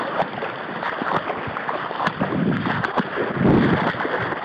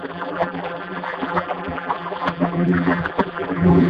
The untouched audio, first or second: first